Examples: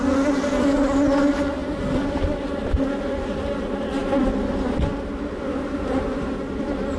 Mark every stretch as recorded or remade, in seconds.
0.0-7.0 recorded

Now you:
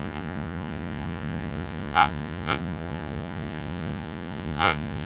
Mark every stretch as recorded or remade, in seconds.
0.0-5.1 remade

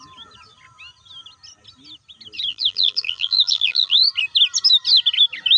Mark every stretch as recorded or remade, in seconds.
0.0-2.5 recorded; 2.5-4.0 remade; 4.0-5.6 recorded

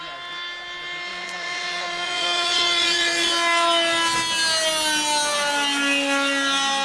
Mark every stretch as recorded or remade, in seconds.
0.0-1.1 recorded; 1.1-3.3 remade; 3.3-6.8 recorded

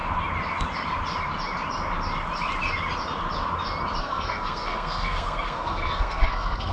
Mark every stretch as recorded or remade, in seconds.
0.0-4.0 recorded; 4.0-6.7 remade

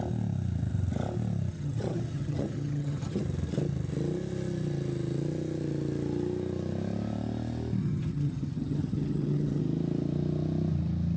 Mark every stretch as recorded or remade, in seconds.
0.0-1.5 recorded; 1.5-3.2 remade; 3.2-7.8 recorded; 7.8-9.6 remade; 9.6-11.2 recorded

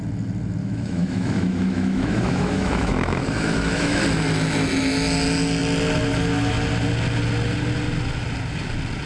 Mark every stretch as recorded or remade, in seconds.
0.0-0.6 recorded; 0.6-4.0 remade; 4.0-9.1 recorded